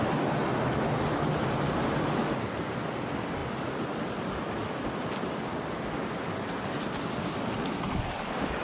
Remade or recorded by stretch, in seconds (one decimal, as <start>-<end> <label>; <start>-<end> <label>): 0.0-8.6 recorded